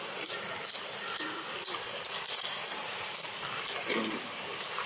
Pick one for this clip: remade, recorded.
recorded